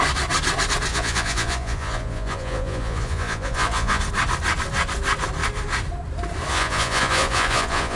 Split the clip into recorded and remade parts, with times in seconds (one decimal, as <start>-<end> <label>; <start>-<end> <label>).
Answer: 0.0-0.9 recorded; 0.9-4.0 remade; 4.0-6.5 recorded; 6.5-8.0 remade

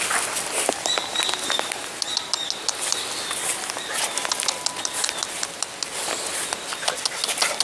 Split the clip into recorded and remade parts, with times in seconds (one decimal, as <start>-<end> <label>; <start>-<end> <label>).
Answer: 0.0-7.6 recorded

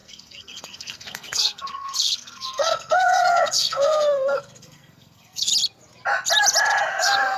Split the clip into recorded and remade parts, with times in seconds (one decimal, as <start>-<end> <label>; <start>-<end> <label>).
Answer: 0.0-5.5 remade; 5.5-6.9 recorded; 6.9-7.4 remade

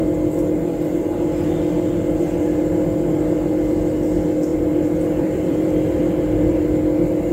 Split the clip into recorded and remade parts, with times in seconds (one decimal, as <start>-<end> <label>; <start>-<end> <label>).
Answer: 0.0-4.5 recorded; 4.5-6.6 remade; 6.6-7.3 recorded

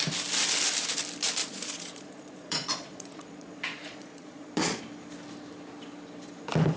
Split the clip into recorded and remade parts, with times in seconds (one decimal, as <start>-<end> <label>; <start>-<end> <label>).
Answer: 0.0-1.4 recorded; 1.4-4.8 remade; 4.8-6.8 recorded

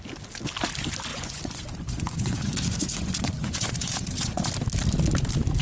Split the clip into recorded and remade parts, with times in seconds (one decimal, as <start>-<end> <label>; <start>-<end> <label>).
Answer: 0.0-1.1 recorded; 1.1-4.5 remade; 4.5-5.6 recorded

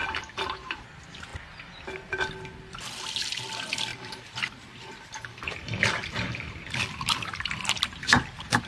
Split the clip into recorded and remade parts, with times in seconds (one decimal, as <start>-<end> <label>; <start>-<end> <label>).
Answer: 0.0-0.8 remade; 0.8-3.9 recorded; 3.9-7.7 remade; 7.7-8.7 recorded

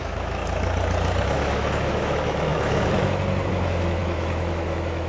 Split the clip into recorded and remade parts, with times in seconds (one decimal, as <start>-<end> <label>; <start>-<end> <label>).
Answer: 0.0-0.4 remade; 0.4-1.2 recorded; 1.2-5.1 remade